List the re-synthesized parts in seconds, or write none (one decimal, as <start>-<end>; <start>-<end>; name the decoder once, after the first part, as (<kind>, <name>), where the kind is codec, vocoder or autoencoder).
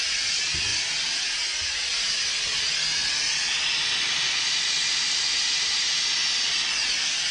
none